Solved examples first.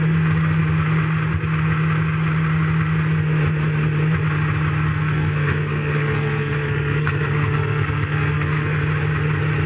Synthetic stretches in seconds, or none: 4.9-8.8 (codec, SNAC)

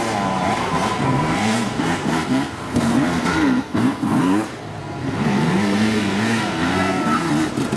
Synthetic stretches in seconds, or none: 0.6-4.2 (codec, SNAC); 4.8-7.3